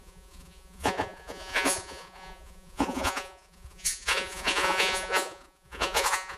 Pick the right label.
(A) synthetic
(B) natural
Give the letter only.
A